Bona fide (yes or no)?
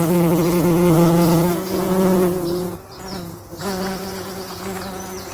no